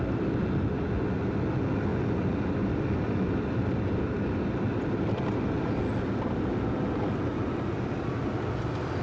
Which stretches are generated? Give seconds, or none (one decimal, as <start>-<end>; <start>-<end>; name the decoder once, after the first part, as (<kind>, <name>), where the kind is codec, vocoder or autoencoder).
none